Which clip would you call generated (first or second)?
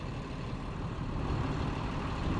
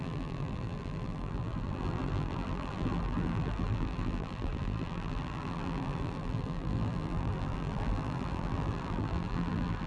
second